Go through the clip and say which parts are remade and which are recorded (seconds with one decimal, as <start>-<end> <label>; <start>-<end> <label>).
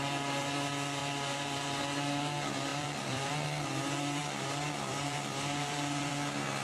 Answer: 0.0-1.0 recorded; 1.0-1.8 remade; 1.8-2.7 recorded; 2.7-3.3 remade; 3.3-4.2 recorded; 4.2-6.1 remade; 6.1-6.6 recorded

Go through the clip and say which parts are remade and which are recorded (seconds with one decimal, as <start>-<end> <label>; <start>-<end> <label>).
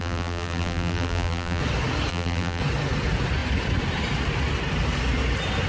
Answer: 0.0-1.6 remade; 1.6-2.1 recorded; 2.1-2.6 remade; 2.6-5.7 recorded